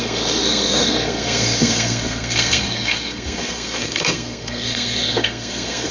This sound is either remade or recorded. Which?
remade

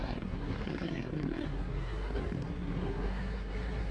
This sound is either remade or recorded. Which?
remade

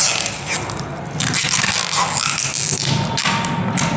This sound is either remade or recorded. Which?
recorded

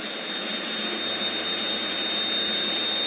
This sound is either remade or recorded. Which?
recorded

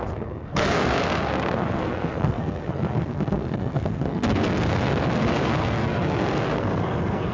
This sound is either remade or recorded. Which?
remade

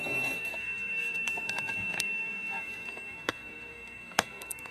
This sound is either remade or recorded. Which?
remade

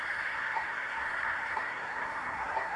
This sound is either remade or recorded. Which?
remade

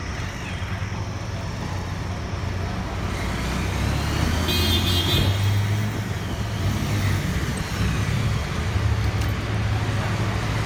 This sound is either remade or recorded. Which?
recorded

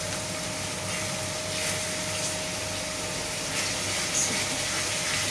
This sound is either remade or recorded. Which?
recorded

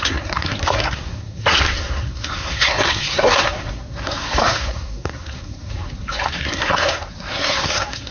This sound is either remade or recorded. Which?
remade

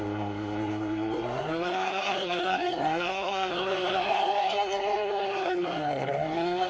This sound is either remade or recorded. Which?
remade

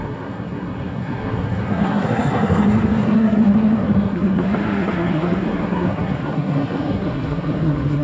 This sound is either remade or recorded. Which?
remade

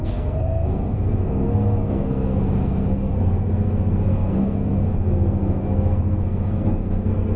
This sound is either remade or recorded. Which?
remade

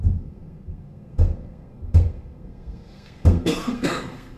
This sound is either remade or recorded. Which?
remade